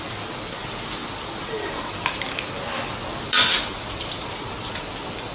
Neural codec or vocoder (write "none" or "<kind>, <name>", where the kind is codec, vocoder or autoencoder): none